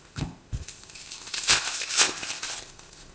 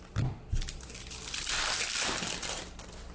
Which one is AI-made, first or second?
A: first